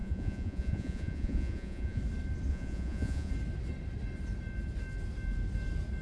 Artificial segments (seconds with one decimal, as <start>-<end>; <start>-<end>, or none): 0.0-2.0; 2.5-3.3